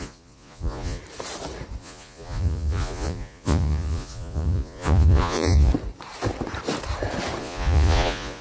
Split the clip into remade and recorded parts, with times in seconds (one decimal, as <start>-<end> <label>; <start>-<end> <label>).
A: 0.0-1.0 remade; 1.0-1.8 recorded; 1.8-5.7 remade; 5.7-7.4 recorded; 7.4-8.4 remade